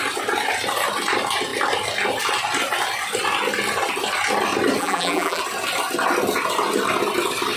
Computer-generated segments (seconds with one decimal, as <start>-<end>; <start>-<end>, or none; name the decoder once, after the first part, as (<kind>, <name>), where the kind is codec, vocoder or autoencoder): 4.8-5.4 (vocoder, BigVGAN v2)